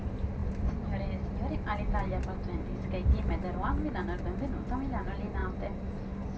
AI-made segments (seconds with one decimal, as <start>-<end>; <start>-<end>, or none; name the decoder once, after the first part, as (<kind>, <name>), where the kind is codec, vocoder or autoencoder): 0.4-1.0 (vocoder, BigVGAN v2)